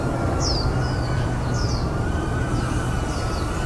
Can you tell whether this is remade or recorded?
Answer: remade